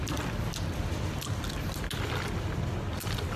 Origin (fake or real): real